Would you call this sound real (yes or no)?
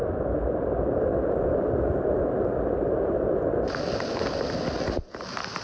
yes